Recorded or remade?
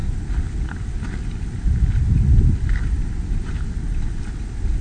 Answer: recorded